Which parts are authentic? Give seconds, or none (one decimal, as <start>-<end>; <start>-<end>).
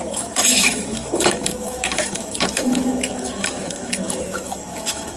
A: none